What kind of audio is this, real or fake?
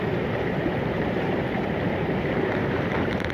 fake